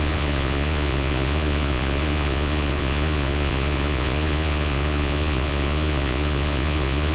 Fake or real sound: fake